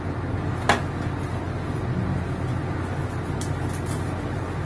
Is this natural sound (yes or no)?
yes